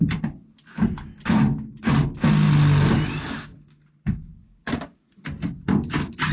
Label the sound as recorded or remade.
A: recorded